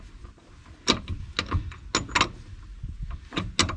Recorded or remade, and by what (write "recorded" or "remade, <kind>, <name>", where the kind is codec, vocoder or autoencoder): recorded